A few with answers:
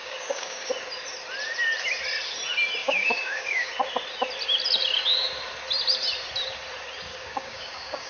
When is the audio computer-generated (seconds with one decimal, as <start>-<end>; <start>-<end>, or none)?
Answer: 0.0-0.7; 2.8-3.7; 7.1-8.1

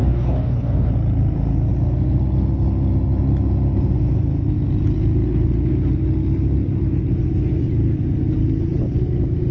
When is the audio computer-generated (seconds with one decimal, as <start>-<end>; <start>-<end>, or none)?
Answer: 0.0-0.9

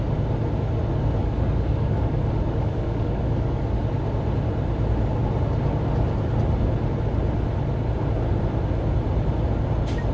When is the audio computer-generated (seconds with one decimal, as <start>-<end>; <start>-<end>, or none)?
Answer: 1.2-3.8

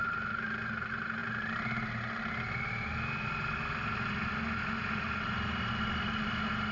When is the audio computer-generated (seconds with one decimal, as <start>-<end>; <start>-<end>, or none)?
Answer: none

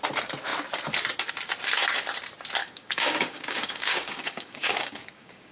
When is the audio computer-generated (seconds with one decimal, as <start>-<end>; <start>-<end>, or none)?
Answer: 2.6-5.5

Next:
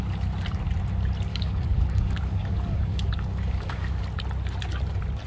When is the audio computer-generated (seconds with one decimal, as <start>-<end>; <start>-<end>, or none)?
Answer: 1.3-4.0

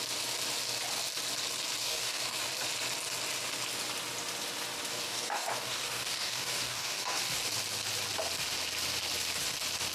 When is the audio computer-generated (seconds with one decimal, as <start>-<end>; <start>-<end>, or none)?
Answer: 1.8-2.4; 4.9-7.2

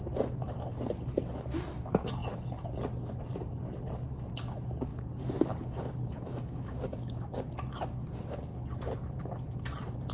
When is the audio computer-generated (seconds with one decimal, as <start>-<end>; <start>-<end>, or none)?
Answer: 4.9-7.5